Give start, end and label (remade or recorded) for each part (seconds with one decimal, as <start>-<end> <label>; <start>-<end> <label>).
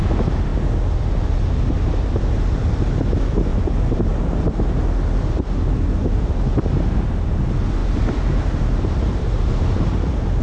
0.0-3.5 recorded; 3.5-4.4 remade; 4.4-7.8 recorded; 7.8-10.4 remade